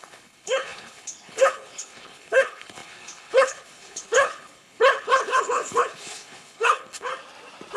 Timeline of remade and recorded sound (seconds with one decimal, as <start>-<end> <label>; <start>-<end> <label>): 0.0-7.1 remade; 7.1-7.8 recorded